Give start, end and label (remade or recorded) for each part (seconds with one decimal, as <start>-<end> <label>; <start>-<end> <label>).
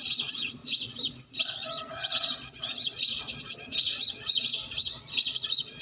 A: 0.0-5.8 remade